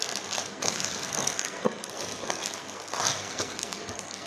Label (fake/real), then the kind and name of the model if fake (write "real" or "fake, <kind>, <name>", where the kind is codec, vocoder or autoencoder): fake, codec, SNAC